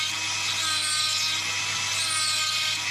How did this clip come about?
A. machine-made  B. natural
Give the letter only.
B